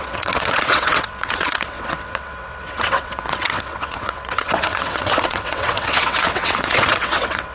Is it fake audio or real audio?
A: fake